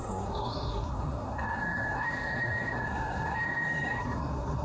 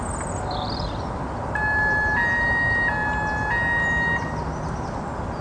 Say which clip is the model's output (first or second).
first